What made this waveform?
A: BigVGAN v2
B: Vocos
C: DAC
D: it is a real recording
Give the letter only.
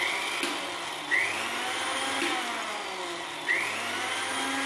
D